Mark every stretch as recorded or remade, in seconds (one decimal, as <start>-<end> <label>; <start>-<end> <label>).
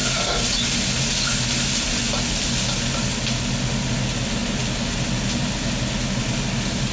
0.0-6.9 recorded